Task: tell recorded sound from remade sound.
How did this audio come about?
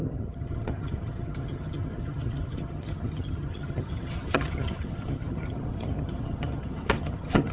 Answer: remade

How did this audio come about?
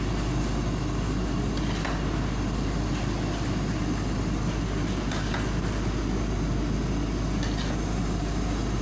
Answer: recorded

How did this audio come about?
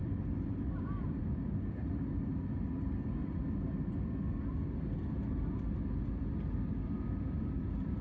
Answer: recorded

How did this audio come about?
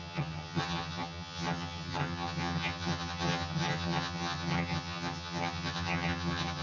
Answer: remade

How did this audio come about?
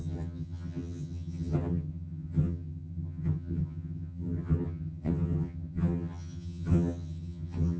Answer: remade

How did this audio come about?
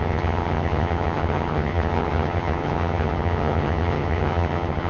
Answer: remade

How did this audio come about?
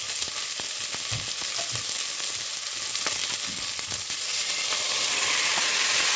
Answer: recorded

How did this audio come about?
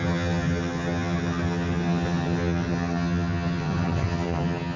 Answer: remade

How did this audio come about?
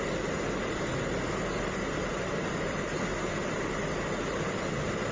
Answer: recorded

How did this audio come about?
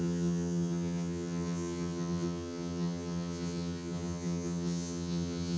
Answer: remade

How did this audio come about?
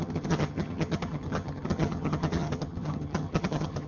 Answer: remade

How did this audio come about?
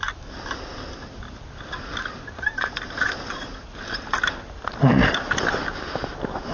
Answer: recorded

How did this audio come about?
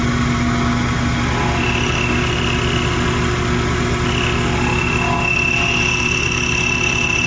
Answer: recorded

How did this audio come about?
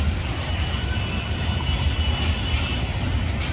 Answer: recorded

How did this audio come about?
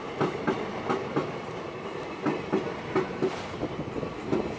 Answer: recorded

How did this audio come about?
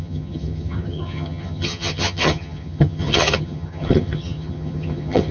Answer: remade